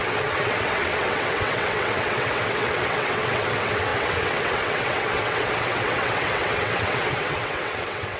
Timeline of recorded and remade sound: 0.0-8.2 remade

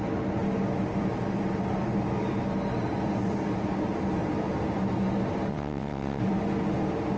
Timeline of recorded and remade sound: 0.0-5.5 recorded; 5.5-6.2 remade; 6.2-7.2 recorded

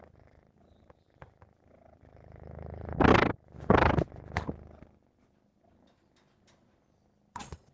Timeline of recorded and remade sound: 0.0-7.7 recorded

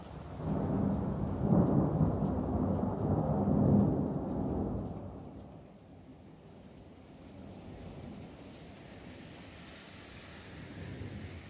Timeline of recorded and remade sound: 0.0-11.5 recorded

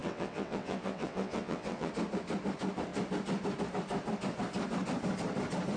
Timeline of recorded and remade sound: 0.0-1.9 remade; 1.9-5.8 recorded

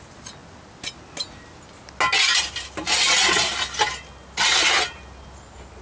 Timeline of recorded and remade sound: 0.0-5.8 recorded